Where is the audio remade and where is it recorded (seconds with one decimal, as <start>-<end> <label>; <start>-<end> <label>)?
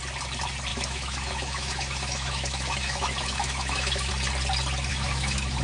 0.0-0.7 recorded; 0.7-4.1 remade; 4.1-4.9 recorded; 4.9-5.6 remade